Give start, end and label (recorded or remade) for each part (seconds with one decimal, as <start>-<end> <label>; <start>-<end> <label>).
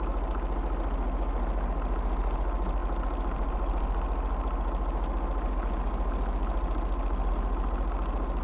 0.0-8.4 recorded